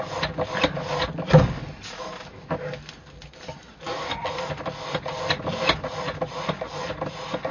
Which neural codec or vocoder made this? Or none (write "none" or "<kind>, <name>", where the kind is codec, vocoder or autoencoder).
none